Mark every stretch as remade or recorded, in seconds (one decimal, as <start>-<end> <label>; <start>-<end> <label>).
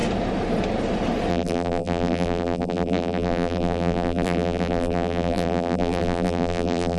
0.0-1.3 recorded; 1.3-7.0 remade